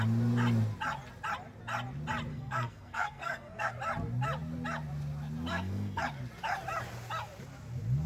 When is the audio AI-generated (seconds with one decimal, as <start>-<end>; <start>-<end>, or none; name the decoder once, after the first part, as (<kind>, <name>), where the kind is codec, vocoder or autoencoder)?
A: 2.3-3.7 (codec, SNAC); 5.5-6.0